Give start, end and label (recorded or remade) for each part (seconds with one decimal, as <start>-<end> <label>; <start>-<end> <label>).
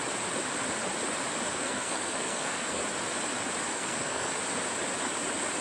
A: 0.0-1.5 recorded; 1.5-2.8 remade; 2.8-3.7 recorded; 3.7-4.3 remade; 4.3-5.6 recorded